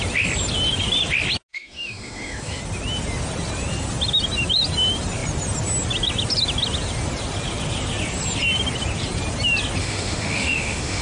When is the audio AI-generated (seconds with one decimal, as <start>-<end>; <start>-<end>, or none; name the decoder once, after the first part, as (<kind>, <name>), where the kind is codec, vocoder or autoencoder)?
1.5-2.6 (autoencoder, DAC-VAE); 9.8-11.0